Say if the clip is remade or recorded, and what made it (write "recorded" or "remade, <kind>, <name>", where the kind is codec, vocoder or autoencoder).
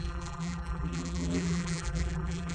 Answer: remade, vocoder, BigVGAN v2